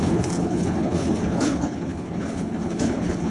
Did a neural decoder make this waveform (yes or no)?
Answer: yes